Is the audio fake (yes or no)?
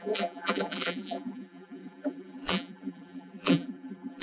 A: yes